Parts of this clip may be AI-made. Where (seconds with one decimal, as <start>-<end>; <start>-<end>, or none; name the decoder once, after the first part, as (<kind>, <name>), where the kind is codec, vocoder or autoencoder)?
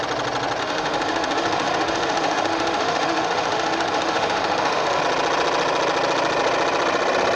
0.6-5.0 (autoencoder, DAC-VAE)